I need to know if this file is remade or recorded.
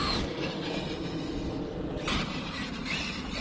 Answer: recorded